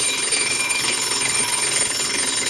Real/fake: fake